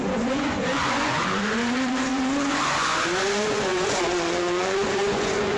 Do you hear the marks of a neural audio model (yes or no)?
yes